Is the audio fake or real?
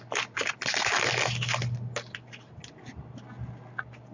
real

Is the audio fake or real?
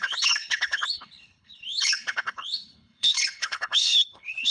fake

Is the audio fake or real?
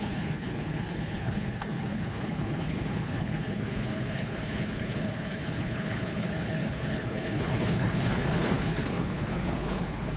fake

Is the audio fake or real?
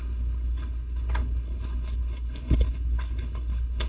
fake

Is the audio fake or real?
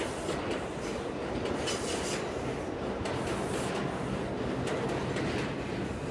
real